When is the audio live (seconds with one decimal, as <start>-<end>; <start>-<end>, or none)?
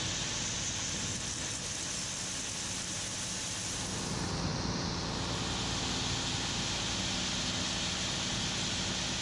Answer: 0.0-9.2